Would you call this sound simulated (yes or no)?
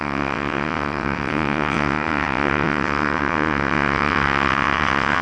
yes